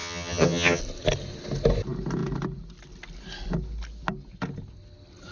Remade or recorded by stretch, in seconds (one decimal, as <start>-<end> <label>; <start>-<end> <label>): 0.0-0.8 remade; 0.8-5.3 recorded